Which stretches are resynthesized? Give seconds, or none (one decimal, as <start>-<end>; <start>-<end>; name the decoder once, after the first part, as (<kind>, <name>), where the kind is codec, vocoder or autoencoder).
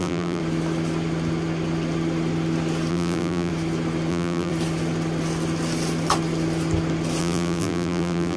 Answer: 0.0-0.4 (vocoder, BigVGAN v2); 2.9-3.5; 4.1-4.5; 7.2-8.4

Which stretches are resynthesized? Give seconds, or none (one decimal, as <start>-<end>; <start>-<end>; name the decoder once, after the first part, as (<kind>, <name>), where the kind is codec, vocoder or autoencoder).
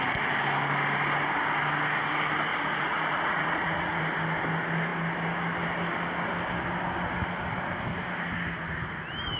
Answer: 2.5-4.0 (vocoder, Vocos)